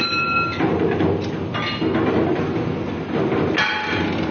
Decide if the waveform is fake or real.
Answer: real